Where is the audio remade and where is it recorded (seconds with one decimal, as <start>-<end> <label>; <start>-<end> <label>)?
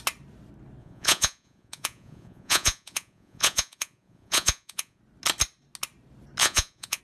0.0-0.8 recorded; 0.8-5.0 remade; 5.0-6.4 recorded; 6.4-7.0 remade